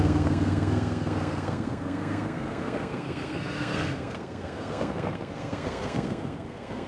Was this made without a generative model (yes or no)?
no